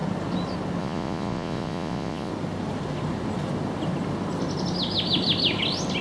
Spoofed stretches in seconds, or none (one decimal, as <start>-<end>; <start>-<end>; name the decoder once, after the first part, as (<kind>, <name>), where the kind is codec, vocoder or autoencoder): 0.8-2.3 (vocoder, Vocos)